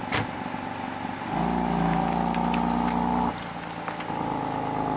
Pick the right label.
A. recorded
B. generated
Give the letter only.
A